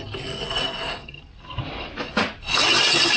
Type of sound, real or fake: real